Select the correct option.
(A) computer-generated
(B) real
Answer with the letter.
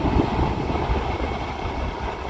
B